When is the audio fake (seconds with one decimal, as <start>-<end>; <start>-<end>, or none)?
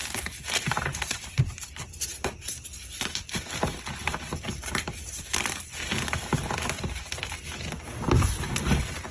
0.0-1.5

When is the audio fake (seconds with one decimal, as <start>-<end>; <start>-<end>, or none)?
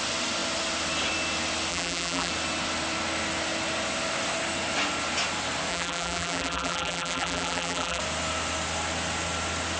1.7-2.3; 5.7-8.0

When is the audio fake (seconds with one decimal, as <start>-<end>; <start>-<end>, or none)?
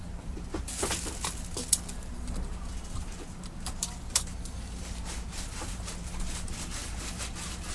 0.0-7.7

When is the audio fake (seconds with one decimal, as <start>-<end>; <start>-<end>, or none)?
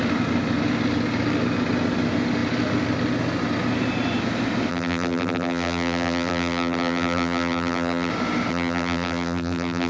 4.7-8.1; 8.5-9.9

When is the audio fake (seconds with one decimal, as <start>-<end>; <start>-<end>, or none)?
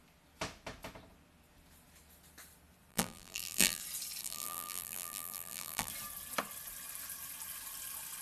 2.9-3.8; 4.2-5.9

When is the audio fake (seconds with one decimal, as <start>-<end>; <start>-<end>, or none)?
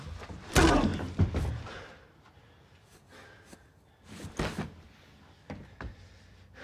none